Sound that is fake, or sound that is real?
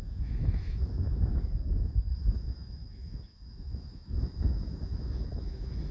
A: fake